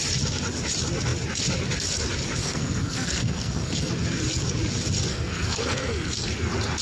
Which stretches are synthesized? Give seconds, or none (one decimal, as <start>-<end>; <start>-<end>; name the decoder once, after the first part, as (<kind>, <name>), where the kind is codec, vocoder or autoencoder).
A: 2.4-3.9 (codec, SNAC); 5.1-6.3

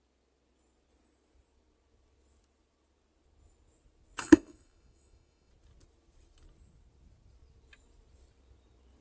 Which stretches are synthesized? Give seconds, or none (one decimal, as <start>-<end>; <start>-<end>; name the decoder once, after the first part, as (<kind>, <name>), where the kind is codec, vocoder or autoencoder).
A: 4.2-5.5 (autoencoder, DAC-VAE)

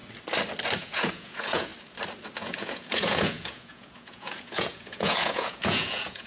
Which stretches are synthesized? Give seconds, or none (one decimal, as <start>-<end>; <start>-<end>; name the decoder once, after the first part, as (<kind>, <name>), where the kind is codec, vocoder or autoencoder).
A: 0.8-1.7 (vocoder, Vocos); 2.4-6.3